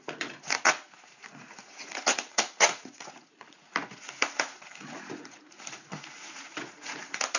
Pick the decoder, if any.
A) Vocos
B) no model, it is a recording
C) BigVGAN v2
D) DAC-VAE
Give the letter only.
A